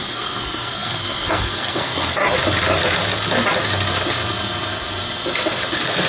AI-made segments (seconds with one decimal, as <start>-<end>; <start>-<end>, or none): 0.0-2.2